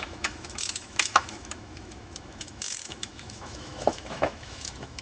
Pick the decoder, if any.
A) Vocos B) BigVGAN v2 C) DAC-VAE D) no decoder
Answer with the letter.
C